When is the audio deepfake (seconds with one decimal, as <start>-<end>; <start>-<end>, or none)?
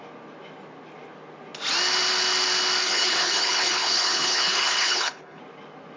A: 2.8-5.4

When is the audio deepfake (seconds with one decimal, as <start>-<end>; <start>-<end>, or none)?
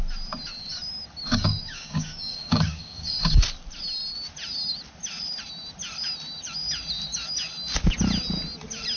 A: 1.3-3.4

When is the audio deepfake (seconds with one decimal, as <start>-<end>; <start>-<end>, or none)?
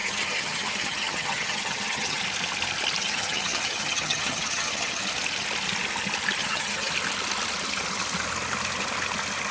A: 0.0-2.2; 3.0-5.0; 6.4-6.9